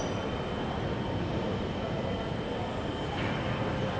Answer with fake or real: real